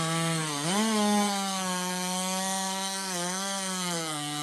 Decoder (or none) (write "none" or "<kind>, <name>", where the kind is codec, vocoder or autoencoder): codec, SNAC